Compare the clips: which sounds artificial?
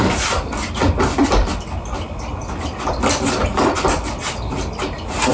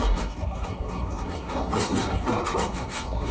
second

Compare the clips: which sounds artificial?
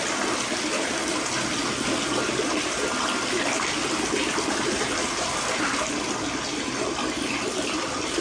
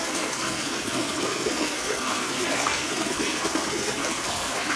second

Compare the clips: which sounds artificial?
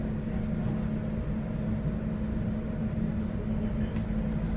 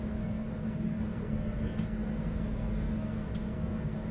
second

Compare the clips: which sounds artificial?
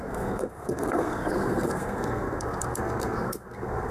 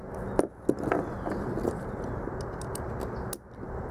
first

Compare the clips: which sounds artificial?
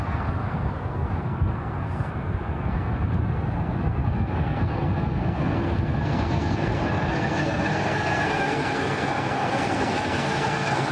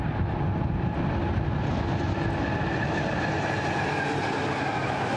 first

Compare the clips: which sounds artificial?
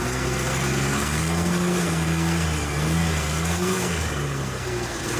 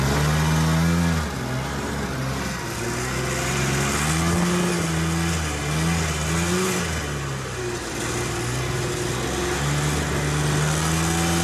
first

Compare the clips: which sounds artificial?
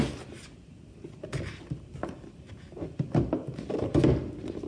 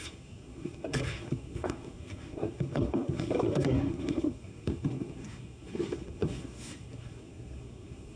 second